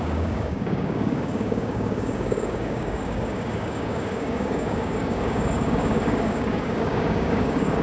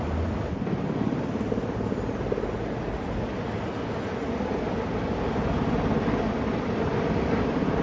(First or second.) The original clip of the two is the second